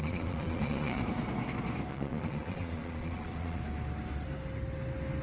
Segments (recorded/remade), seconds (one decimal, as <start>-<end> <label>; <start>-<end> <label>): 0.0-1.0 remade; 1.0-1.9 recorded; 1.9-3.6 remade; 3.6-5.2 recorded